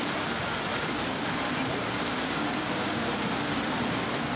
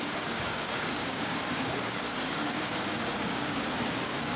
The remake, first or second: second